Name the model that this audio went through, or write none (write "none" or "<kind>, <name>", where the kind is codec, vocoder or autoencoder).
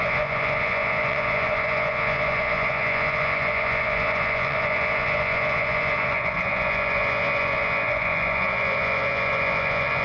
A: vocoder, Vocos